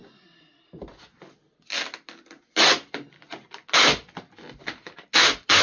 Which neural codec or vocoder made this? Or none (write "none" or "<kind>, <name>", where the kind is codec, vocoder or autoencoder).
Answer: none